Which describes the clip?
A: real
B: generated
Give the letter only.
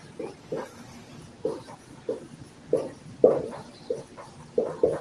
A